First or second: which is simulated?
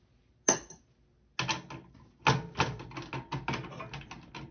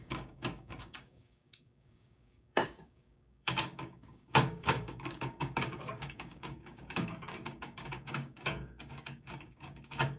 second